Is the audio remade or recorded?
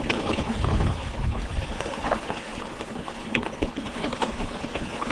remade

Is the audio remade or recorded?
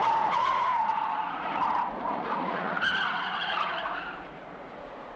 remade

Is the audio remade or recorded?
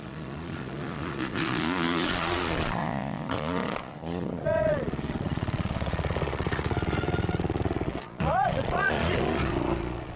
remade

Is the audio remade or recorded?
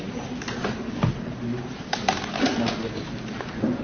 recorded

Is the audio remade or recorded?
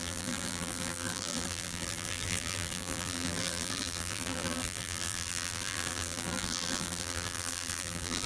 remade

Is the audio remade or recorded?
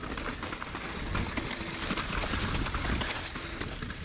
recorded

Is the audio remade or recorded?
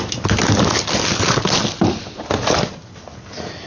recorded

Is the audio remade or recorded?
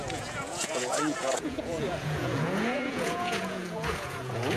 remade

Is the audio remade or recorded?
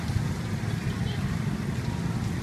recorded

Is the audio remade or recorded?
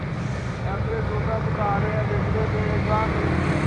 recorded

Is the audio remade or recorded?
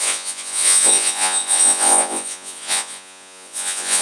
remade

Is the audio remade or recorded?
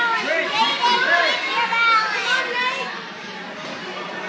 recorded